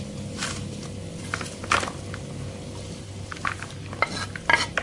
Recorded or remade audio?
recorded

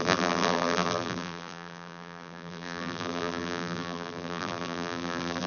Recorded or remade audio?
remade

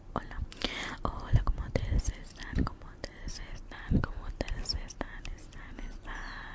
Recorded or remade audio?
recorded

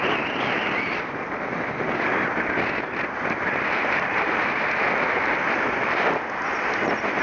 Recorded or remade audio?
recorded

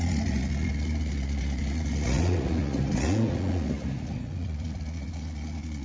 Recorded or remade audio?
remade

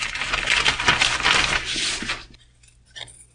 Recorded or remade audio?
recorded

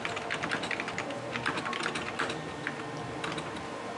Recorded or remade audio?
recorded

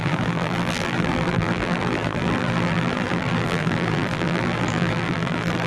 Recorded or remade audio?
remade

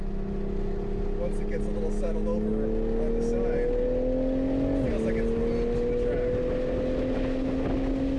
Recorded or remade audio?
recorded